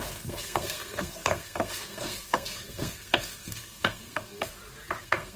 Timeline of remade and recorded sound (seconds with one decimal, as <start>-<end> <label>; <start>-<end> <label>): 0.0-4.5 remade; 4.5-5.0 recorded; 5.0-5.4 remade